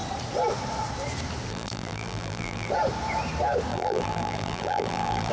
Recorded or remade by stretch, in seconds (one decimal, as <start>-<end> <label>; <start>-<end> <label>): 0.0-1.5 recorded; 1.5-2.7 remade; 2.7-3.7 recorded; 3.7-5.3 remade